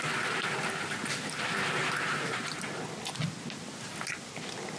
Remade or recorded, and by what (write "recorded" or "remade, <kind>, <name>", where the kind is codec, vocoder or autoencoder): recorded